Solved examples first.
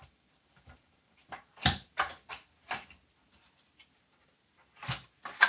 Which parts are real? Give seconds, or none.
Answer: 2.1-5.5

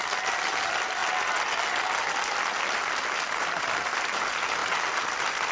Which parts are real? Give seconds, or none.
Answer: 0.0-5.5